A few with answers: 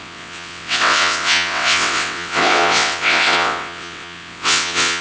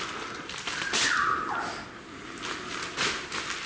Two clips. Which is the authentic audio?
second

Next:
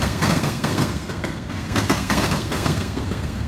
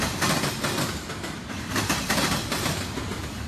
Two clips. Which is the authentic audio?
second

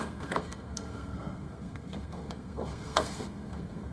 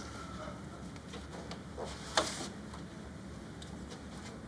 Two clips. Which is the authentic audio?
second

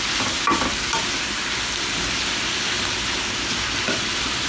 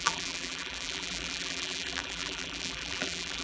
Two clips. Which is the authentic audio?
first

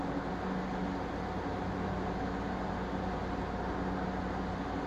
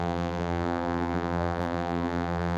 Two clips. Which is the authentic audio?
first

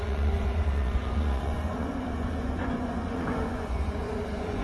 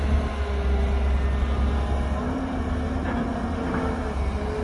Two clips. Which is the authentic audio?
second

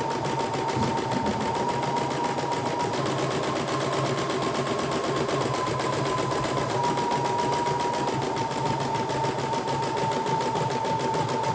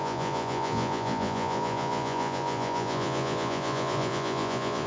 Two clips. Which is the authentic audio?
first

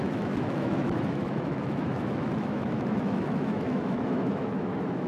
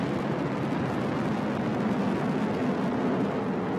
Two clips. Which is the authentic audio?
second